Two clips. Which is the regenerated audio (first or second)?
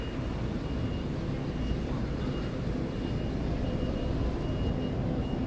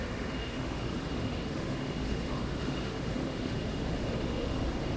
second